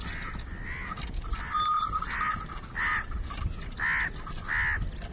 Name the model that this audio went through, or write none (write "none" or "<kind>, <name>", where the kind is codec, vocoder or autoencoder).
none